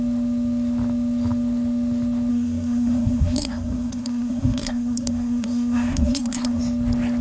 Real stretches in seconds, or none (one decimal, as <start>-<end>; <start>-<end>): 0.0-2.3; 6.6-7.2